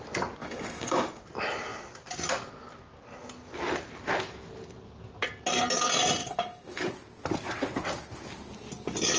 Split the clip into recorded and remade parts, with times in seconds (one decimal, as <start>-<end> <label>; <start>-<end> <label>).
0.0-0.4 recorded; 0.4-1.2 remade; 1.2-6.2 recorded; 6.2-6.8 remade; 6.8-9.2 recorded